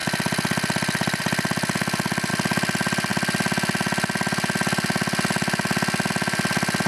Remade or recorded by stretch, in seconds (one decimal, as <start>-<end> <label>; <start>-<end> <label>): 0.0-6.9 recorded